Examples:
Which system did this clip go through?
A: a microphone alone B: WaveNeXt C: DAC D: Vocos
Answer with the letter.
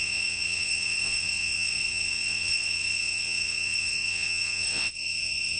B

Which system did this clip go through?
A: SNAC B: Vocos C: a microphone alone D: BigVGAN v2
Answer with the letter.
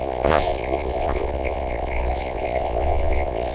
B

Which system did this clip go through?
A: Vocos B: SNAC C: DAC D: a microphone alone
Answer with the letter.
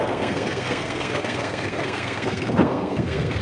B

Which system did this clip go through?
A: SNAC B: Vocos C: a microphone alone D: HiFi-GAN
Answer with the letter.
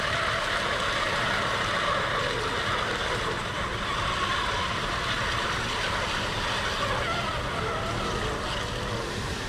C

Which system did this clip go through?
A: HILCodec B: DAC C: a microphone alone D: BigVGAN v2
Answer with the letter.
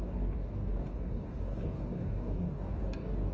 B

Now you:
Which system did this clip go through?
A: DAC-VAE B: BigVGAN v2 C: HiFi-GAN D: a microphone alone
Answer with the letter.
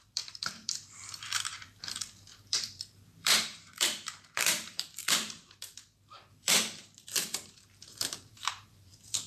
B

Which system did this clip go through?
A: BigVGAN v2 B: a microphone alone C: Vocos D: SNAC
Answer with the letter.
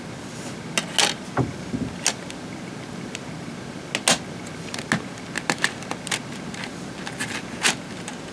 B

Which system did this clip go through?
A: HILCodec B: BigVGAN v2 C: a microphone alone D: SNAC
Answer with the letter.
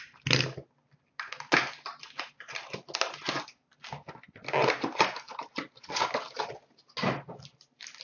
C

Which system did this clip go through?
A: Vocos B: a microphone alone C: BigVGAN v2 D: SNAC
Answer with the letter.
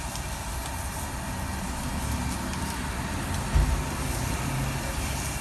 B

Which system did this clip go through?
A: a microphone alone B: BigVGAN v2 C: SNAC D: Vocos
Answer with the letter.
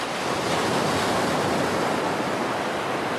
A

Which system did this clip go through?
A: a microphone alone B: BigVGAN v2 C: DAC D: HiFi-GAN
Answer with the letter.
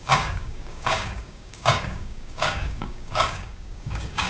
C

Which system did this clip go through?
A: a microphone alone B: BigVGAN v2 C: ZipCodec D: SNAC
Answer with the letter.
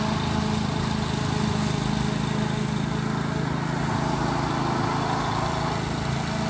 A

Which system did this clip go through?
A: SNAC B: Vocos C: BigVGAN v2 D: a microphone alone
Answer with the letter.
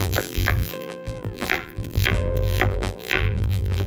C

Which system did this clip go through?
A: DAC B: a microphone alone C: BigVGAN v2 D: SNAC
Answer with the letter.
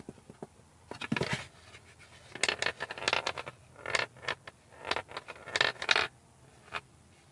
B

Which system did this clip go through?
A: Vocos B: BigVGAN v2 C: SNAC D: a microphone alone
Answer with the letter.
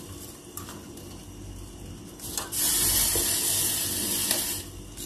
D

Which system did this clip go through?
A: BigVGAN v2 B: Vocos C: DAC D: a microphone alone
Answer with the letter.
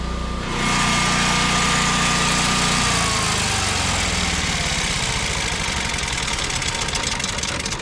D